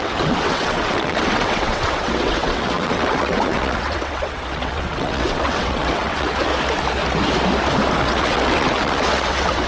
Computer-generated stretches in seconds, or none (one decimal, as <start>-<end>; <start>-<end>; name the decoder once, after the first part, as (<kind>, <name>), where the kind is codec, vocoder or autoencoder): 0.0-6.5 (vocoder, WaveNeXt); 8.0-9.7

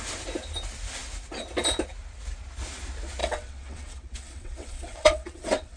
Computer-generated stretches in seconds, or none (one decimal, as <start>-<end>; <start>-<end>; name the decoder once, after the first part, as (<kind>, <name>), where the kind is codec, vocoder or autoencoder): 3.2-5.8 (vocoder, WaveNeXt)

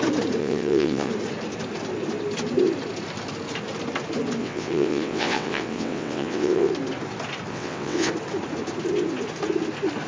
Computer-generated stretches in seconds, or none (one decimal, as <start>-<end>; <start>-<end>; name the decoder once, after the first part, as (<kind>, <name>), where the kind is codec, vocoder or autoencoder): 0.4-1.1 (vocoder, WaveNeXt); 4.4-6.7; 7.5-8.1

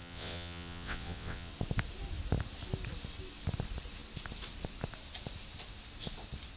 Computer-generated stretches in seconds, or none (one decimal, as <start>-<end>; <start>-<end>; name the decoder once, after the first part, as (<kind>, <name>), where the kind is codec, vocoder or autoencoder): 0.0-1.5 (vocoder, WaveNeXt)

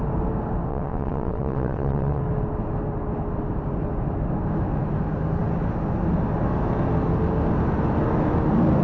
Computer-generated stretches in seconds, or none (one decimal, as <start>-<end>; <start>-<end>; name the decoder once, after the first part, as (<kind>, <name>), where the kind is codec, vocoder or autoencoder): 0.7-2.2 (vocoder, WaveNeXt)

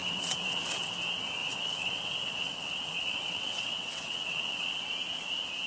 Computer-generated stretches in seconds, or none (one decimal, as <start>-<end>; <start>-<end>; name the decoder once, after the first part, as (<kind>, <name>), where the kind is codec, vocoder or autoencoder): 0.0-0.9 (vocoder, WaveNeXt); 1.4-4.8